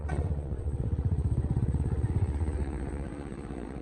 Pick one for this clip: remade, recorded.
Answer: remade